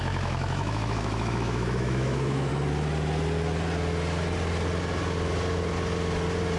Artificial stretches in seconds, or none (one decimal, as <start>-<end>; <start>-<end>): 0.0-2.5